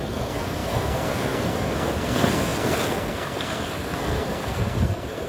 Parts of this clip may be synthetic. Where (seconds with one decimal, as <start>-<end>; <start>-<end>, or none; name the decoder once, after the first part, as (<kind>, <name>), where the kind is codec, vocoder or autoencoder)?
0.0-5.3 (codec, SNAC)